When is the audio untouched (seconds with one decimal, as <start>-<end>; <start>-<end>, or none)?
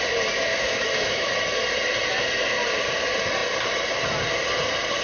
0.0-0.5; 1.3-5.0